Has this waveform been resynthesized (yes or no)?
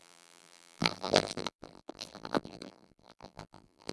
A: yes